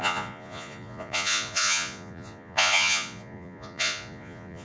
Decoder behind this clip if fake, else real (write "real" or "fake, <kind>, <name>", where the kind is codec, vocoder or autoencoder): fake, vocoder, Vocos